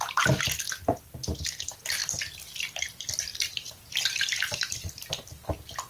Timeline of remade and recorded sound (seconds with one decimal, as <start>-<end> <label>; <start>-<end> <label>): 0.0-3.3 recorded; 3.3-3.9 remade; 3.9-5.9 recorded